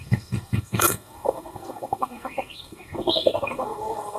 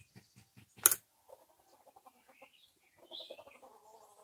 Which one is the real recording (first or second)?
second